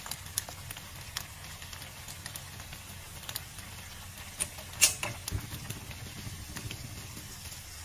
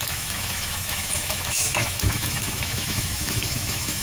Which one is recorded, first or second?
first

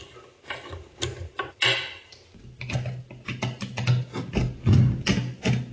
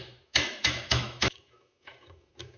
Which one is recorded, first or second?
first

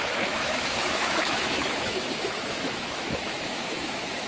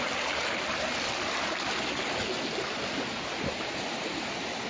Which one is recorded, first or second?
second